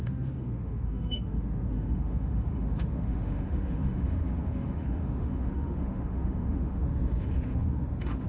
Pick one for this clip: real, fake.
fake